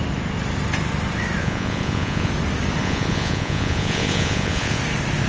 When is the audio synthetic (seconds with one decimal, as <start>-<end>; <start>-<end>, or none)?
1.4-2.3; 2.8-4.8